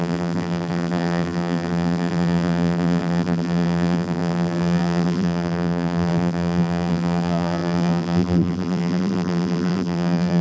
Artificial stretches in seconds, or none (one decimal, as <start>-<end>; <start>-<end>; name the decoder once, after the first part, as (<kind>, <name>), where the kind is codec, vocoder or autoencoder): 0.0-10.4 (vocoder, BigVGAN v2)